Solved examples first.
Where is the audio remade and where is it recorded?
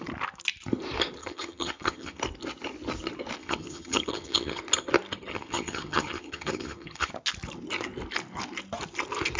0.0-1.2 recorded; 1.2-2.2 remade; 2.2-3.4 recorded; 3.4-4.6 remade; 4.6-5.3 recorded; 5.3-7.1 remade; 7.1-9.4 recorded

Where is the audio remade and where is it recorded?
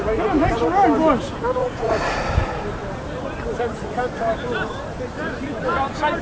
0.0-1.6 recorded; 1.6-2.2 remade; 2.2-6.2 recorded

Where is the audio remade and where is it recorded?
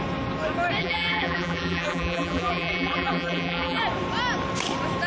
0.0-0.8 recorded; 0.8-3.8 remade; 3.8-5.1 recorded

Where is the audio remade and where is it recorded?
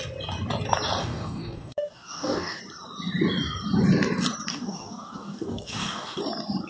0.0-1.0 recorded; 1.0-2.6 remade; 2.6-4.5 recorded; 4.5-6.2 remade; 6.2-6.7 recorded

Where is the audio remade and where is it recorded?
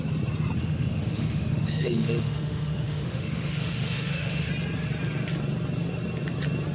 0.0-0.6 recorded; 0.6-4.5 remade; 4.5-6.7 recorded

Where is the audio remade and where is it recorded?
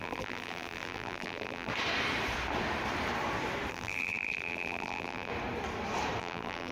0.0-1.7 remade; 1.7-3.7 recorded; 3.7-5.3 remade; 5.3-6.2 recorded; 6.2-6.7 remade